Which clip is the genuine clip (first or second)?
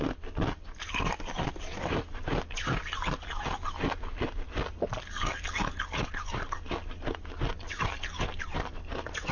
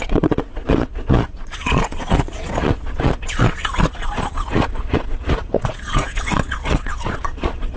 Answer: first